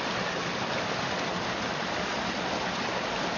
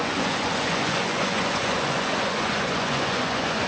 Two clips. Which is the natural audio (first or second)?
first